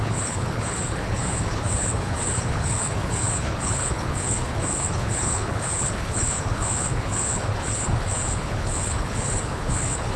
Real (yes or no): no